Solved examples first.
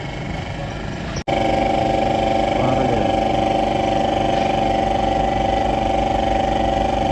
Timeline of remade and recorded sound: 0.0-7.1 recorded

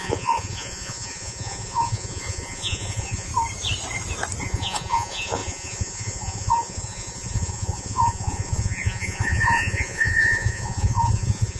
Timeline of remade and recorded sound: 0.0-3.3 remade; 3.3-4.4 recorded; 4.4-11.6 remade

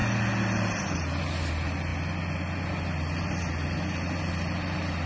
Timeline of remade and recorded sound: 0.0-5.1 recorded